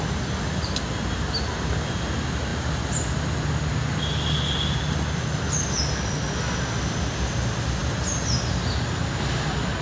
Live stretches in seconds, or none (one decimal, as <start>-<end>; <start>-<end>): 0.0-9.8